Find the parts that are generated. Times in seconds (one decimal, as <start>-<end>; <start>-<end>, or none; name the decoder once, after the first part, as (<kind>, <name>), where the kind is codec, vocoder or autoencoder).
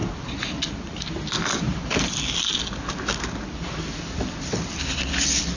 none